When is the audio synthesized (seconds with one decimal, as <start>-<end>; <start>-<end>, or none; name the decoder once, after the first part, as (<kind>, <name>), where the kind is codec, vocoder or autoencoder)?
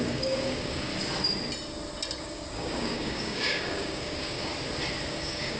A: 0.0-0.9 (codec, DAC); 2.2-4.5; 5.1-5.6